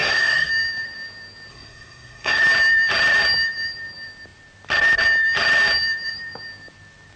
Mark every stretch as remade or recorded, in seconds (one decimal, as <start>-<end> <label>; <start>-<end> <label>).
0.0-0.5 remade; 0.5-1.5 recorded; 1.5-2.4 remade; 2.4-7.2 recorded